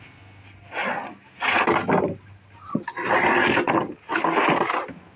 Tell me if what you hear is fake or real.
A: real